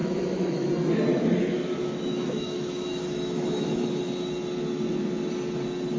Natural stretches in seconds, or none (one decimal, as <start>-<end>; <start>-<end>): 0.7-1.1; 4.0-6.0

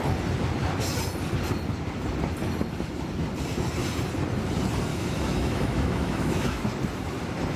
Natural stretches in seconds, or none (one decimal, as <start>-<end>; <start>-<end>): 0.0-4.9; 6.6-7.6